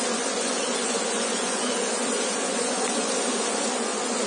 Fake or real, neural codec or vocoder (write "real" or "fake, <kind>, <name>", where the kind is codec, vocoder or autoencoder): fake, vocoder, Vocos